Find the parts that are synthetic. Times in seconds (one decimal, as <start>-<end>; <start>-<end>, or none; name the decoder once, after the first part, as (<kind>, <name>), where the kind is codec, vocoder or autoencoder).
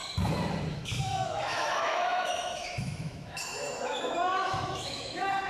0.7-5.5 (autoencoder, DAC-VAE)